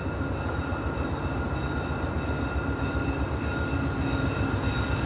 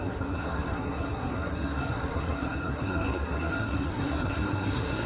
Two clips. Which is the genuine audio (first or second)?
first